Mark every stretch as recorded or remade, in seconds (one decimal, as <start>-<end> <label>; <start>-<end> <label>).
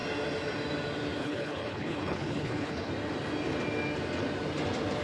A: 0.0-1.2 recorded; 1.2-2.9 remade; 2.9-5.0 recorded